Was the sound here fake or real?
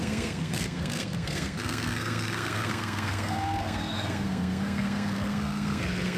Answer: fake